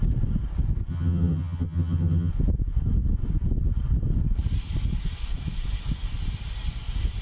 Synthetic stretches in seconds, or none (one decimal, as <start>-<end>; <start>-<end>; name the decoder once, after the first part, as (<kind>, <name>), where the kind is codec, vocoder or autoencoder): 0.9-2.3 (vocoder, HiFi-GAN)

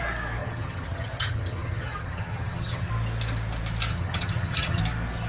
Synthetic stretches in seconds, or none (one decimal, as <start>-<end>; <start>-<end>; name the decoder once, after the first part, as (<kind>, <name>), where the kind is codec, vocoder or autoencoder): 0.4-2.9 (vocoder, HiFi-GAN); 3.9-4.8

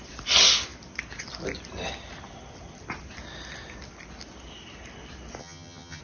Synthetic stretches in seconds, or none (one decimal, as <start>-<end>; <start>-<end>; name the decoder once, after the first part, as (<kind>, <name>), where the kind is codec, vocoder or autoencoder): 5.4-6.0 (vocoder, HiFi-GAN)

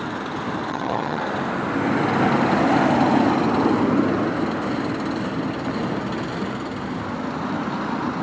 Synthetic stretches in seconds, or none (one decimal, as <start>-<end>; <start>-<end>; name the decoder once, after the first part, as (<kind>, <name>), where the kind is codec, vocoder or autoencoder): 0.7-1.2 (vocoder, HiFi-GAN)

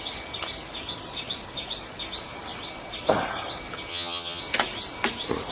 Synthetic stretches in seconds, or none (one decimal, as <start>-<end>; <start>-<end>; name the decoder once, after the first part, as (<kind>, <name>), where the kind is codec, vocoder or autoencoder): 3.9-4.4 (vocoder, HiFi-GAN)

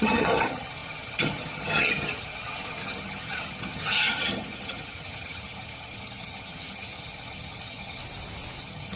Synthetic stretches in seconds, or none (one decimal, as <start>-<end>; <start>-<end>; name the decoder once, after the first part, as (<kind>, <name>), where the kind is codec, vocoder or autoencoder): 0.0-8.0 (vocoder, HiFi-GAN); 8.6-9.0

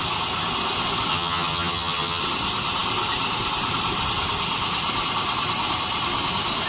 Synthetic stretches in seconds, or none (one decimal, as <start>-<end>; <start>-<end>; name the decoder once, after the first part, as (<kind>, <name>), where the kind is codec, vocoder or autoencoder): 1.1-2.2 (vocoder, HiFi-GAN)

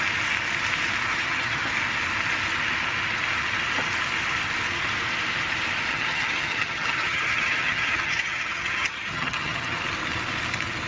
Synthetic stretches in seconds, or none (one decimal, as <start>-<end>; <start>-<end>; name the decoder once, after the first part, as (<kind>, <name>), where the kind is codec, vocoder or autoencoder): 1.1-1.7 (vocoder, HiFi-GAN); 5.9-9.8